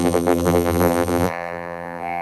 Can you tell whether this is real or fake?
fake